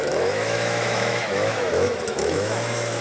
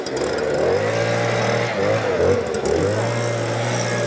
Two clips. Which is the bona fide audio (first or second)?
second